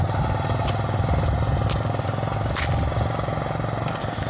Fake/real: real